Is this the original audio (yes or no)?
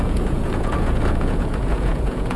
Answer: no